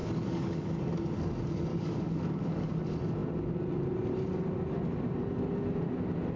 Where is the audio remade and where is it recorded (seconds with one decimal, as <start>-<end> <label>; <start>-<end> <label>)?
0.0-0.8 remade; 0.8-1.7 recorded; 1.7-2.8 remade; 2.8-6.4 recorded

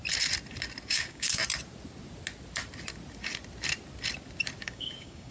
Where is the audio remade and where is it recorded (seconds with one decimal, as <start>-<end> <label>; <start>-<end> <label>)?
0.0-0.9 recorded; 0.9-1.4 remade; 1.4-4.6 recorded; 4.6-5.3 remade

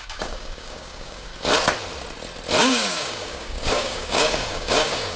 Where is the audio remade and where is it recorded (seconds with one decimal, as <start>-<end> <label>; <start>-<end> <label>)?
0.0-1.3 remade; 1.3-2.6 recorded; 2.6-5.2 remade

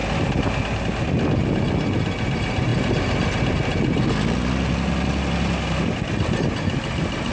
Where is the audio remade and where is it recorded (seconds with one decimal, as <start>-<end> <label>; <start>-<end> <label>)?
0.0-7.3 recorded

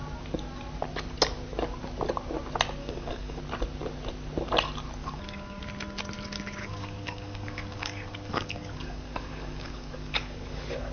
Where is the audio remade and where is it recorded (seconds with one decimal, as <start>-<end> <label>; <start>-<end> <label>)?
0.0-2.8 recorded; 2.8-3.4 remade; 3.4-5.0 recorded; 5.0-5.6 remade; 5.6-6.6 recorded; 6.6-10.9 remade

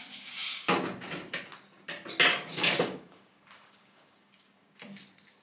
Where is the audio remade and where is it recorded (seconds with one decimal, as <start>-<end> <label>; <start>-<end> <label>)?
0.0-2.3 recorded; 2.3-4.8 remade; 4.8-5.4 recorded

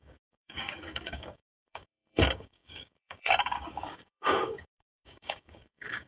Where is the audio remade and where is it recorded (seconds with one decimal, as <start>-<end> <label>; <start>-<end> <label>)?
0.0-6.1 remade